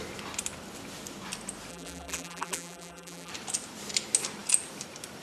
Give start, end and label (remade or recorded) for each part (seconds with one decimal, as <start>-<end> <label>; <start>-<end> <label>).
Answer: 0.0-1.7 recorded; 1.7-3.3 remade; 3.3-5.2 recorded